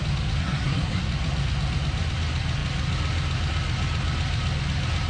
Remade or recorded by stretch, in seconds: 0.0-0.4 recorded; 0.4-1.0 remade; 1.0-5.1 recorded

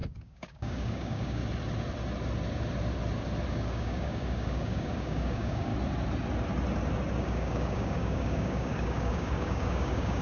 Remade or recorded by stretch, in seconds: 0.0-1.4 remade; 1.4-3.5 recorded; 3.5-5.7 remade; 5.7-7.2 recorded; 7.2-10.2 remade

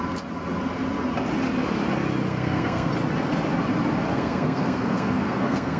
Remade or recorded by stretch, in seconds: 0.0-2.3 recorded; 2.3-2.9 remade; 2.9-4.1 recorded; 4.1-5.8 remade

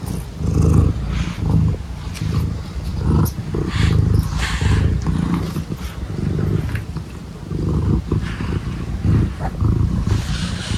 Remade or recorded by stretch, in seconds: 0.0-10.8 recorded

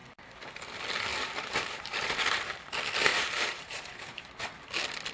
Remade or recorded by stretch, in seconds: 0.0-0.5 remade; 0.5-1.1 recorded; 1.1-2.6 remade; 2.6-3.1 recorded; 3.1-4.3 remade; 4.3-5.1 recorded

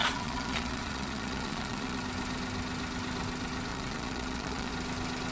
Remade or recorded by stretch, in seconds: 0.0-2.0 remade; 2.0-3.7 recorded; 3.7-4.7 remade; 4.7-5.3 recorded